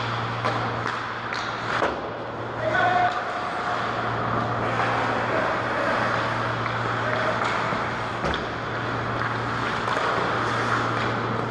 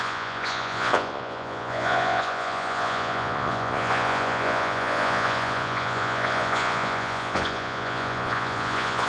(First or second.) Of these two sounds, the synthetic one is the second